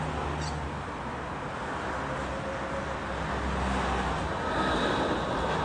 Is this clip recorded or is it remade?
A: recorded